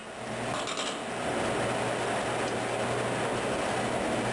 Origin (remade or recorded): recorded